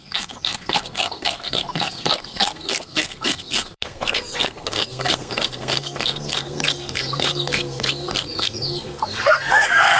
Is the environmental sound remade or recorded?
remade